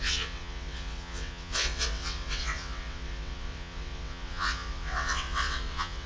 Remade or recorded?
remade